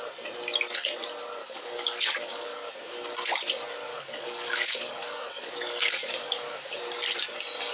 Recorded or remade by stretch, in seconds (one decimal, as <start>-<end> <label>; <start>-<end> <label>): 0.0-1.4 recorded; 1.4-2.7 remade; 2.7-3.9 recorded; 3.9-6.8 remade; 6.8-7.7 recorded